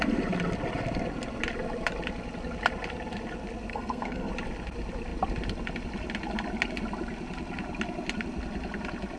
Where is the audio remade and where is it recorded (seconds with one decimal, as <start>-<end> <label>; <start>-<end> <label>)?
0.0-3.7 recorded; 3.7-4.3 remade; 4.3-9.2 recorded